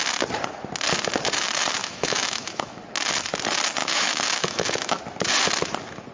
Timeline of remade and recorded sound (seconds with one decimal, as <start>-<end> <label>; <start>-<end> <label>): 0.0-1.8 recorded; 1.8-2.8 remade; 2.8-3.8 recorded; 3.8-5.0 remade; 5.0-6.1 recorded